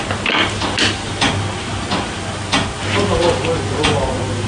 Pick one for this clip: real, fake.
real